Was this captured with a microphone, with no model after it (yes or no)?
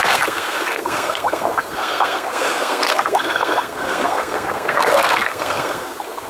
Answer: no